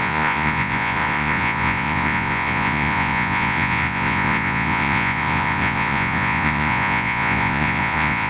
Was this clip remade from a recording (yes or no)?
yes